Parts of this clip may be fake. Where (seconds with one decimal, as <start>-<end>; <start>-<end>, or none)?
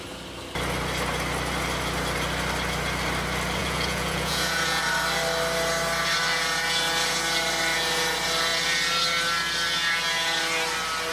3.6-4.8